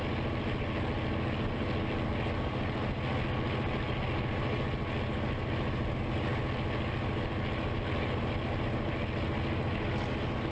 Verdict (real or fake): real